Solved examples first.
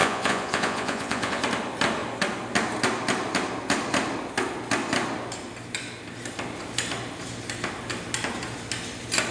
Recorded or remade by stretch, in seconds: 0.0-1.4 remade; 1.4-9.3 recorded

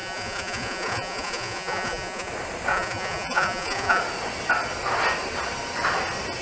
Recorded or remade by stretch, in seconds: 0.0-2.3 remade; 2.3-2.7 recorded; 2.7-4.0 remade; 4.0-6.4 recorded

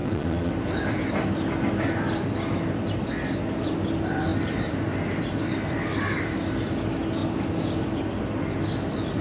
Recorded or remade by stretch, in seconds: 0.0-0.5 remade; 0.5-9.2 recorded

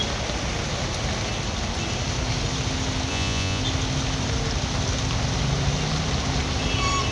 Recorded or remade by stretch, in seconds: 0.0-3.1 recorded; 3.1-3.6 remade; 3.6-7.1 recorded

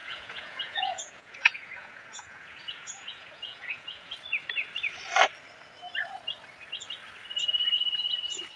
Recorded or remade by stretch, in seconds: 0.0-4.1 remade; 4.1-8.6 recorded

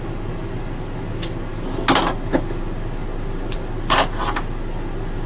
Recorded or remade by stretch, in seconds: 0.0-5.3 recorded